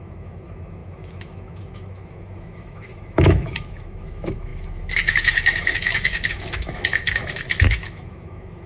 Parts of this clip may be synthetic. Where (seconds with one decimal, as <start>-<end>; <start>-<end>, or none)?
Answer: 0.0-8.7